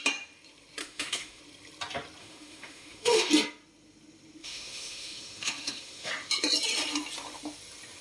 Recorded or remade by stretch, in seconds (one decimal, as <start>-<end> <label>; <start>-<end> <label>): 0.0-0.8 recorded; 0.8-1.4 remade; 1.4-2.2 recorded; 2.2-3.3 remade; 3.3-4.4 recorded; 4.4-6.1 remade; 6.1-8.0 recorded